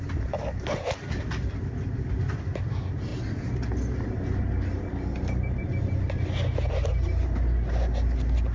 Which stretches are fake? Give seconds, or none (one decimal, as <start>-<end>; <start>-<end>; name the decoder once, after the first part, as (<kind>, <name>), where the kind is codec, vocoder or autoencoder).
none